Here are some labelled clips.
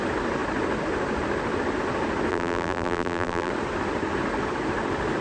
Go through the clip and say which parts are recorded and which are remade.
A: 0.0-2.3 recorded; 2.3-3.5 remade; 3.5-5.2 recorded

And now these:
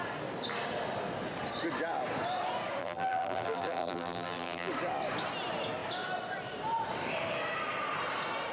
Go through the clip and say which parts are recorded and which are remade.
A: 0.0-2.8 recorded; 2.8-4.7 remade; 4.7-8.5 recorded

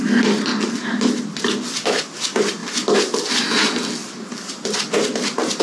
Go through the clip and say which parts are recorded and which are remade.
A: 0.0-5.6 recorded

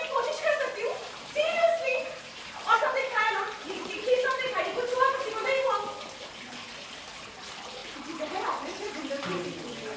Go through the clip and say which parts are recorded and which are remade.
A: 0.0-1.0 recorded; 1.0-5.3 remade; 5.3-7.8 recorded; 7.8-8.9 remade; 8.9-10.0 recorded

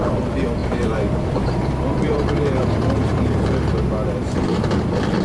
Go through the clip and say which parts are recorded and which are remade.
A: 0.0-0.6 recorded; 0.6-3.7 remade; 3.7-4.5 recorded; 4.5-5.2 remade

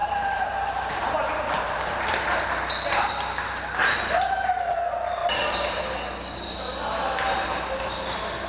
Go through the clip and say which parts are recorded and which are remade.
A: 0.0-1.4 remade; 1.4-5.2 recorded; 5.2-5.8 remade; 5.8-8.5 recorded

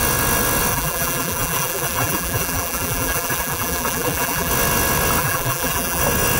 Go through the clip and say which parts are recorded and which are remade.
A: 0.0-0.7 recorded; 0.7-4.5 remade; 4.5-5.2 recorded; 5.2-6.0 remade; 6.0-6.4 recorded

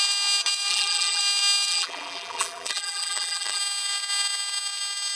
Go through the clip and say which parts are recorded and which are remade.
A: 0.0-0.7 recorded; 0.7-1.2 remade; 1.2-1.7 recorded; 1.7-3.6 remade; 3.6-5.2 recorded